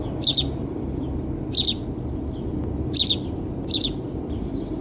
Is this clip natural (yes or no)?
yes